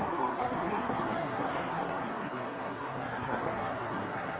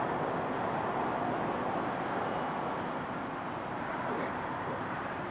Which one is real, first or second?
second